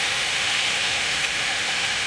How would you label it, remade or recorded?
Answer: remade